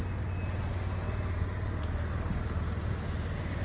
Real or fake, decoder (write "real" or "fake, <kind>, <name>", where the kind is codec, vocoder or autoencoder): real